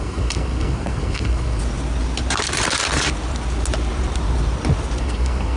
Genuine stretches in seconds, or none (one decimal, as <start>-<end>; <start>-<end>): 1.6-5.0

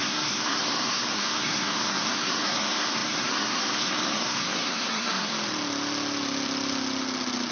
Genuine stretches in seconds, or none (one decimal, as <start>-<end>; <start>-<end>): 5.3-7.5